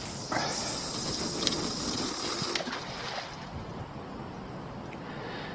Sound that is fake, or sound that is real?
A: real